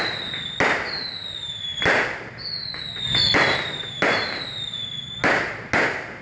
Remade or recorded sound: recorded